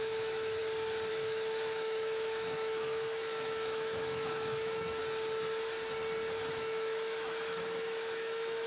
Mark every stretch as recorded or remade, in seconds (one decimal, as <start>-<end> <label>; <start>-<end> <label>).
0.0-0.6 remade; 0.6-1.1 recorded; 1.1-5.0 remade; 5.0-6.5 recorded; 6.5-8.7 remade